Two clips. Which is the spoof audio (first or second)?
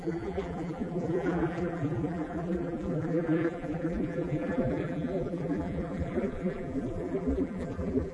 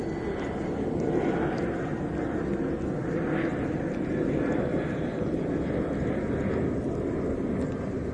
first